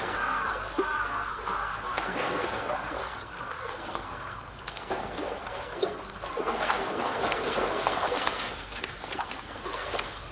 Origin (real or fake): fake